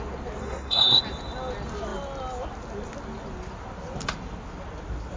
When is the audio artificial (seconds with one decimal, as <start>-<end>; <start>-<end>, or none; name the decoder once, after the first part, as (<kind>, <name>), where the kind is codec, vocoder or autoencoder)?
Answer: 0.4-1.0 (codec, SNAC)